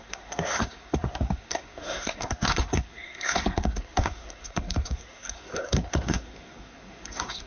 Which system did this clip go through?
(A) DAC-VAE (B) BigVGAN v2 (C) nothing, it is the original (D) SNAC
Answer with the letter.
D